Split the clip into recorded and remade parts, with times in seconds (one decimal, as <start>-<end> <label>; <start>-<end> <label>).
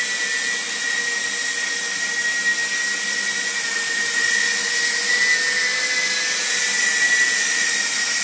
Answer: 0.0-8.2 recorded